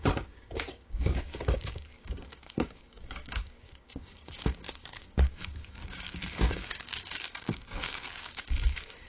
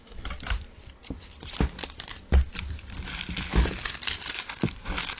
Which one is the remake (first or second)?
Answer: first